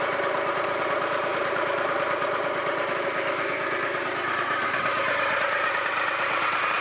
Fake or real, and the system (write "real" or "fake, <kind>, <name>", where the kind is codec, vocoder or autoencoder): fake, vocoder, BigVGAN v2